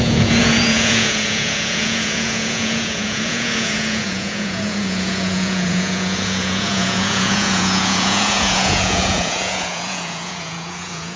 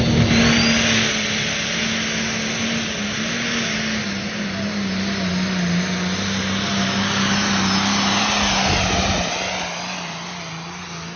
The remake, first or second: first